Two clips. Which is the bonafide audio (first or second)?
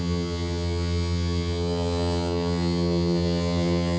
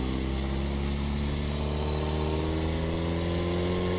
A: second